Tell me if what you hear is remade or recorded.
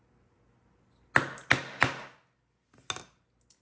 recorded